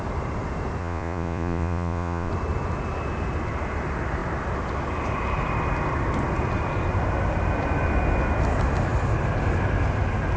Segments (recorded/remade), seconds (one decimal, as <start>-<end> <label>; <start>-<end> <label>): 0.0-0.8 recorded; 0.8-2.3 remade; 2.3-10.4 recorded